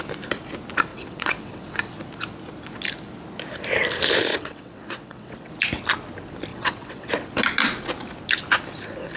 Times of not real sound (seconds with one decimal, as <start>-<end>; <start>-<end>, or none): 0.9-1.9; 4.3-5.5; 6.5-7.1